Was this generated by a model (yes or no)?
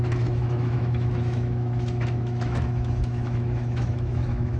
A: yes